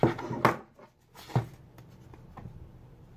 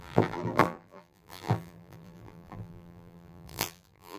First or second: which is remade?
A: second